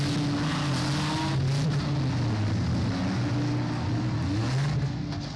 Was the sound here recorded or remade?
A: recorded